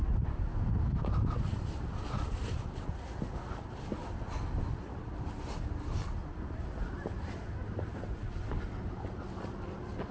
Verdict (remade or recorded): recorded